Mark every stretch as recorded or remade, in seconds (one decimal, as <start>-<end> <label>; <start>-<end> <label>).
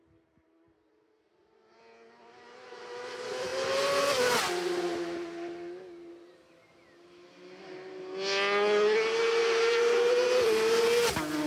0.0-11.5 recorded